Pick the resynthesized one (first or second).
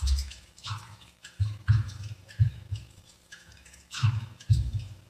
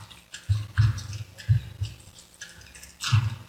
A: first